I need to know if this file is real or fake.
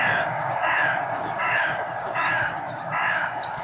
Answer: fake